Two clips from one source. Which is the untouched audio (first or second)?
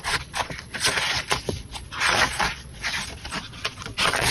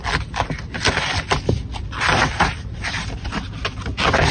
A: second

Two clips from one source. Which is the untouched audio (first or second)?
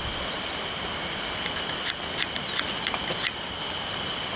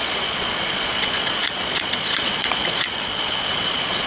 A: first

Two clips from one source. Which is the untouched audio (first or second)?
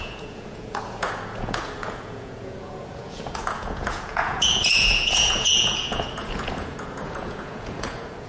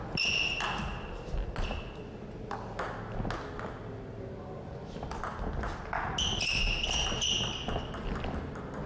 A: second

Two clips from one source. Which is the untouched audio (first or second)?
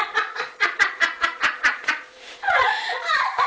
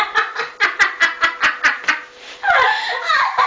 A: second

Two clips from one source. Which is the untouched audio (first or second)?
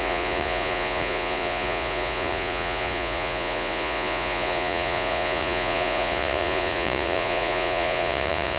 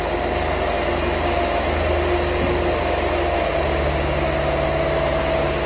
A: second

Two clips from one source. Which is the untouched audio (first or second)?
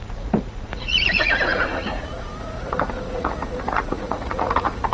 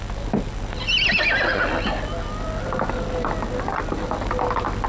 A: second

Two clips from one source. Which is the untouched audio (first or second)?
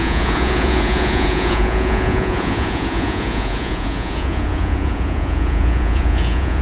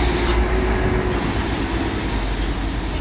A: second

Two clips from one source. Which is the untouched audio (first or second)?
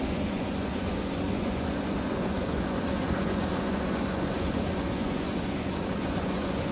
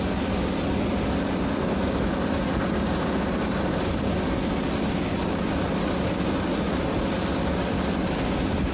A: second